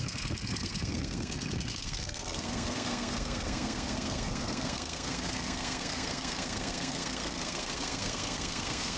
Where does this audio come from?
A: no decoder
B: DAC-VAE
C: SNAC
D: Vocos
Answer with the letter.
C